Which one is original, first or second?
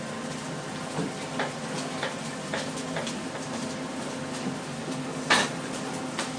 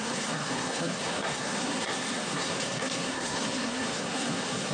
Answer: first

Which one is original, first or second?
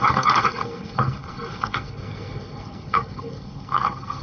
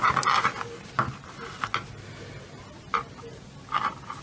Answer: second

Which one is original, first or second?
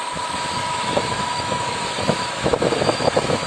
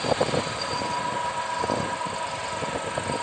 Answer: second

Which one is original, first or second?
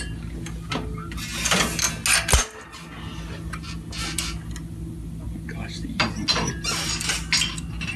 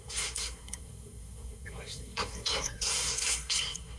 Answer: first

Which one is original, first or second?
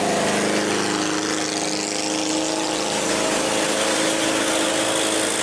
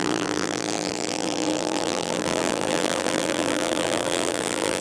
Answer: first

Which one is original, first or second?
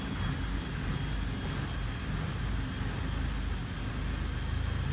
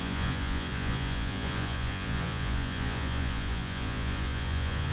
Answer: first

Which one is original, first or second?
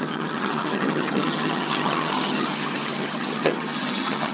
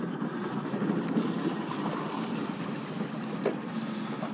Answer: second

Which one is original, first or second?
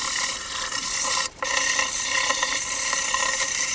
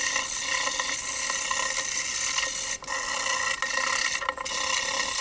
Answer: second